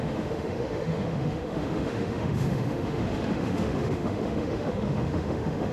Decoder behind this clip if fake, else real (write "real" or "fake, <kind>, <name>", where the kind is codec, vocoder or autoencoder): fake, autoencoder, DAC-VAE